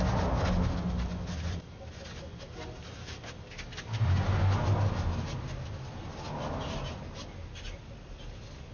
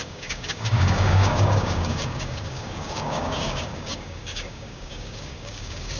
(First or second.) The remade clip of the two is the second